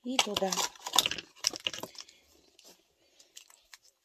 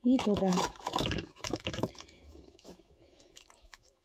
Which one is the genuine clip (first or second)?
first